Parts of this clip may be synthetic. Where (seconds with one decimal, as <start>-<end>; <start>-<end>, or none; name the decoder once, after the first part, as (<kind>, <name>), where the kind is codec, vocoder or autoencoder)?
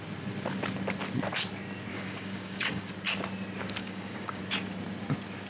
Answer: 1.9-2.9 (codec, DAC); 3.8-4.4